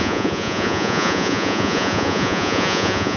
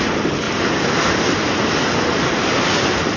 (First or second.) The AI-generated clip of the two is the first